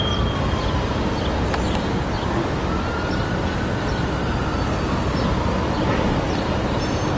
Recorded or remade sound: recorded